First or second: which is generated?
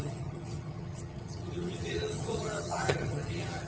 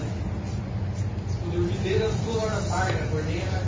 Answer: first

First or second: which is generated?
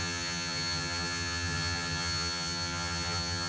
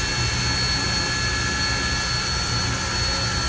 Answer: first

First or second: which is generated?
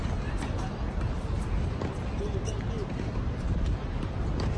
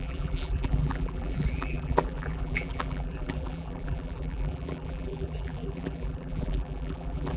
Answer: second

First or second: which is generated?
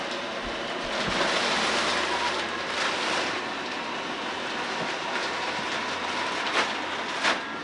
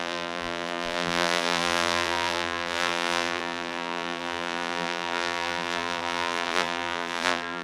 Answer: second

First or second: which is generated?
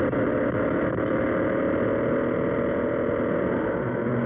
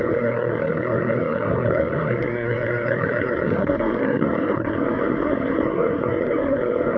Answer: second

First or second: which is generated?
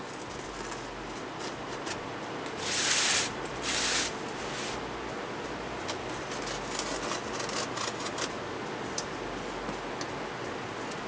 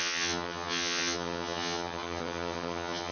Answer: second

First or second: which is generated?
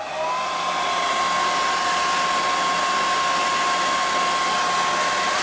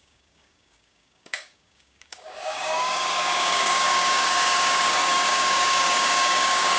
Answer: second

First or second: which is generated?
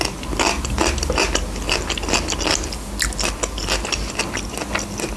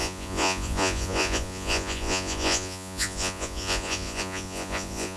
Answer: second